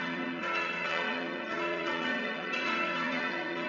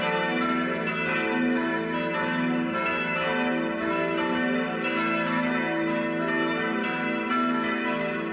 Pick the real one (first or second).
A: second